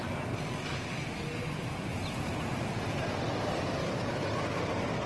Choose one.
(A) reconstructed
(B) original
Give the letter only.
B